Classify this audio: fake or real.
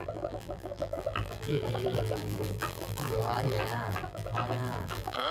fake